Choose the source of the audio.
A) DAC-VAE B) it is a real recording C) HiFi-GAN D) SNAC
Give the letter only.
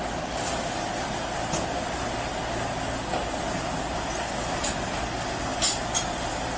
B